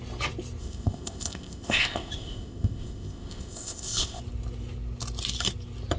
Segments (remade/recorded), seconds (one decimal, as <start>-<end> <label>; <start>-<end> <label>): 0.0-0.6 recorded; 0.6-4.2 remade; 4.2-6.0 recorded